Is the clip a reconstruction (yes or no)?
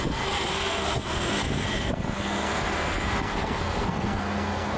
yes